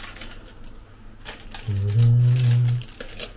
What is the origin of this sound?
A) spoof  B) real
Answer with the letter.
B